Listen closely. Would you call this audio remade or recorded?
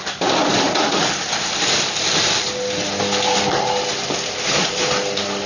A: recorded